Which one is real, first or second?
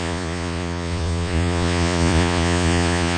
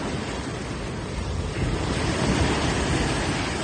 second